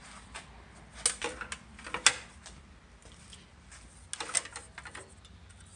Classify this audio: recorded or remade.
recorded